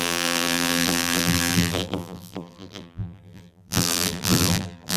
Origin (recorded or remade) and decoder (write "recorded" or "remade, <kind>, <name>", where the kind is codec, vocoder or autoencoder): remade, vocoder, BigVGAN v2